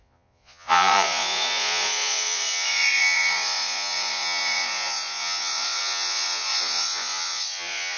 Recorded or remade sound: remade